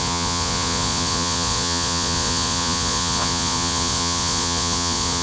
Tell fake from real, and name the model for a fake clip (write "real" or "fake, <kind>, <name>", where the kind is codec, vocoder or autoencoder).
fake, vocoder, Vocos